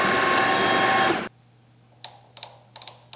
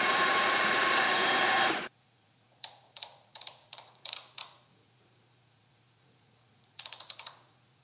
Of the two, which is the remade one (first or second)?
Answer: second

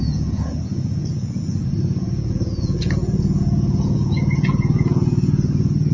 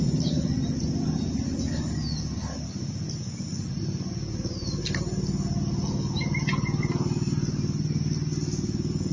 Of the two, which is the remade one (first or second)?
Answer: first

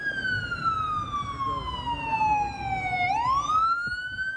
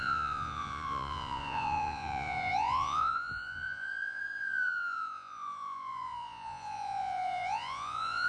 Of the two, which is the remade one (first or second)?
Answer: second